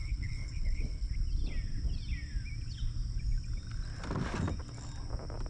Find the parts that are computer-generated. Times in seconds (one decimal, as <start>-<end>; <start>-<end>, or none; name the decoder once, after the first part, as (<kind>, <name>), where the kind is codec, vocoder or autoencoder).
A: 0.0-1.1 (codec, HILCodec)